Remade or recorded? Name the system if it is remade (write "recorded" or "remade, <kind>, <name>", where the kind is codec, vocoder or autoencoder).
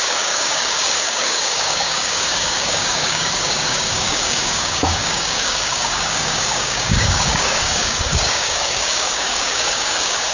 remade, codec, DAC